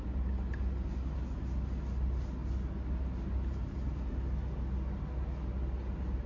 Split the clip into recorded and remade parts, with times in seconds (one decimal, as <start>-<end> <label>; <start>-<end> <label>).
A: 0.0-6.3 recorded